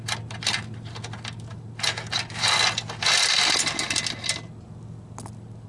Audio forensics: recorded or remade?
recorded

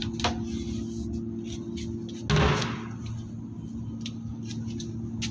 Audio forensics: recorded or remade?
recorded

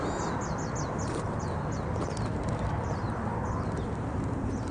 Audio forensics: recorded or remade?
recorded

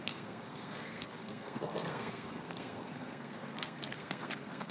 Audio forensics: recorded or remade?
remade